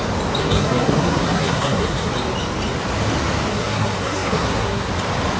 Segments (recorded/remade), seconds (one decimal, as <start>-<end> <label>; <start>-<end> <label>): 0.0-0.4 recorded; 0.4-2.1 remade; 2.1-3.5 recorded; 3.5-4.9 remade; 4.9-5.4 recorded